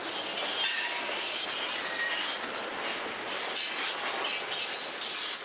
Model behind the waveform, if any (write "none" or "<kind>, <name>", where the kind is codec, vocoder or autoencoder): none